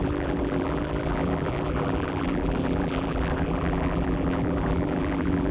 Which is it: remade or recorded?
remade